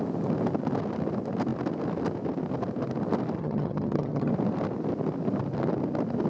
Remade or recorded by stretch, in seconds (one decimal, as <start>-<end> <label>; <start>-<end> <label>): 0.0-3.4 recorded; 3.4-4.3 remade; 4.3-6.3 recorded